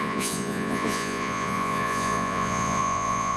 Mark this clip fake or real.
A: fake